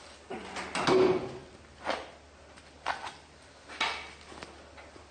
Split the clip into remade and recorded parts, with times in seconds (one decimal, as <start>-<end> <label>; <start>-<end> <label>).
0.0-5.1 recorded